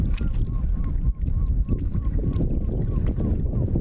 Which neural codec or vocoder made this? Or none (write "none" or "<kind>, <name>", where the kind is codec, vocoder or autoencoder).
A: none